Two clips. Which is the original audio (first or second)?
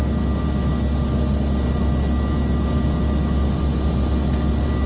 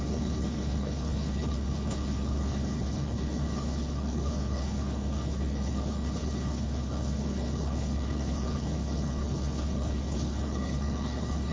first